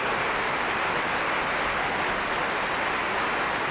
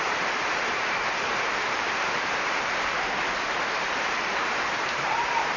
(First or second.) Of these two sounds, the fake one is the second